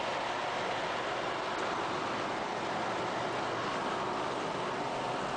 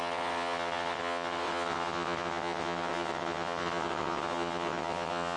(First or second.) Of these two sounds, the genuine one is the first